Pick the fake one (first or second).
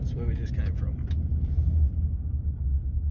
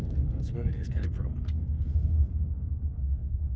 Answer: second